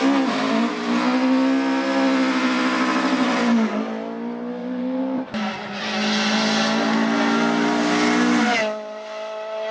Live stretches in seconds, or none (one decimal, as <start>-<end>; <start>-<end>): 0.0-4.6; 5.5-9.7